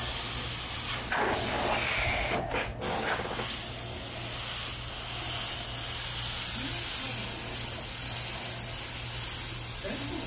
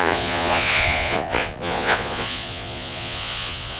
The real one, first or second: first